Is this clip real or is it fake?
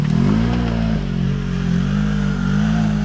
real